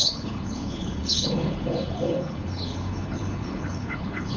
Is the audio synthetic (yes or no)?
yes